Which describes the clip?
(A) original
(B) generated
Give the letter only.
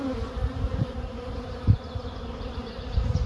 B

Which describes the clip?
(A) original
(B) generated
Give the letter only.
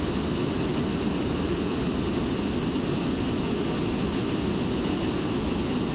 A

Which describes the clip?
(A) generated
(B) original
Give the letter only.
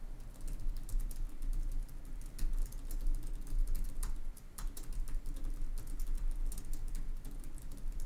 B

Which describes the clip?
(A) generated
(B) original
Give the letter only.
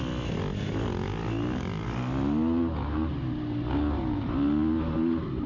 B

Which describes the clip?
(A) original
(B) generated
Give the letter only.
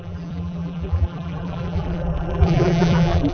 B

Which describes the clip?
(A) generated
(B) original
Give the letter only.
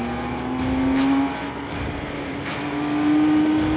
B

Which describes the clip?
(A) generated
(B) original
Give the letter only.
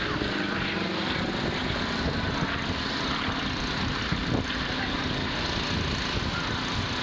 B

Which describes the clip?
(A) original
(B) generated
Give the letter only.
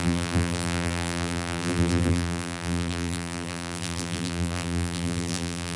B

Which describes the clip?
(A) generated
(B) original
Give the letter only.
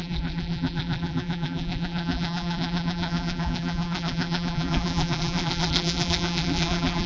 A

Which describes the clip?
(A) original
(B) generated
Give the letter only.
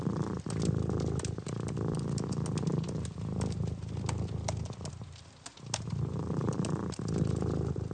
A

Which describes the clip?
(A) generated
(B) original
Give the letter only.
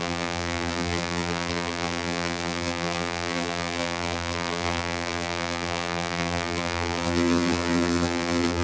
A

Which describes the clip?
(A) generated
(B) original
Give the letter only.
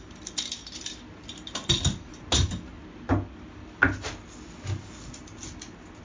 B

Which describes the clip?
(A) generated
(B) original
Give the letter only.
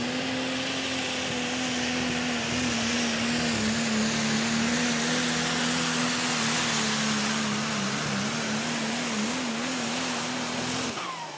B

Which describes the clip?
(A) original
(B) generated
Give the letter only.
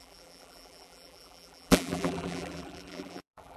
B